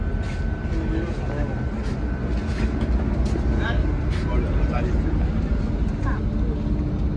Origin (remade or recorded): recorded